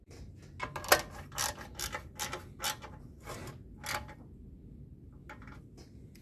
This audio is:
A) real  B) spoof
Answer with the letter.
A